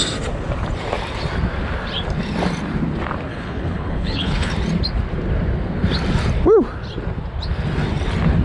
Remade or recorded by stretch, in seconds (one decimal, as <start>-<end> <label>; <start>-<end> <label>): 0.0-3.3 recorded; 3.3-4.5 remade; 4.5-8.4 recorded